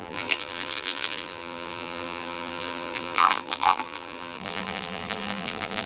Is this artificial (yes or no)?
yes